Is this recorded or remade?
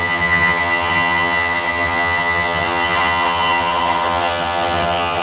remade